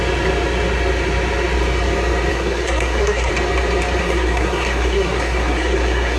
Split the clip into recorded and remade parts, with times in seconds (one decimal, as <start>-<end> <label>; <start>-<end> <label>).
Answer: 0.0-2.3 recorded; 2.3-3.3 remade; 3.3-4.0 recorded; 4.0-6.2 remade